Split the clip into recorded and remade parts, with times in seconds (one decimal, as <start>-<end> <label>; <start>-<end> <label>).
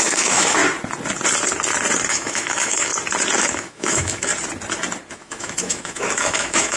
0.0-0.6 remade; 0.6-2.1 recorded; 2.1-2.9 remade; 2.9-3.4 recorded; 3.4-4.3 remade; 4.3-5.1 recorded; 5.1-6.8 remade